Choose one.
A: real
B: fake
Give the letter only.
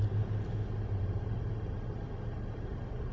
A